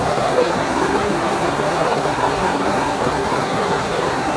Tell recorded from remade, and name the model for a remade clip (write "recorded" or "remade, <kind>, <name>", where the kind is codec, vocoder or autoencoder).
remade, codec, SNAC